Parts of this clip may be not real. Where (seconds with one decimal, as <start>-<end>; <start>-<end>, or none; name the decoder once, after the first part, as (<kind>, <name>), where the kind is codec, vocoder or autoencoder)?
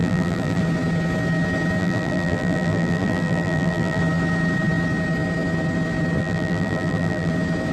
0.0-0.6 (vocoder, BigVGAN v2); 1.8-4.0; 6.2-7.3